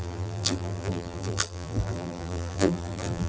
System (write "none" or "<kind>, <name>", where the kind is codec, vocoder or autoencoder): vocoder, BigVGAN v2